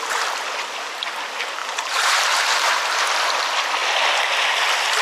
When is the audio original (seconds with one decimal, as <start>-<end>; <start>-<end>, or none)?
0.0-1.6; 2.2-5.0